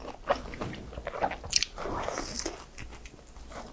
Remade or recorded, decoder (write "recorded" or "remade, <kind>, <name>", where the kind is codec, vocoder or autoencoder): recorded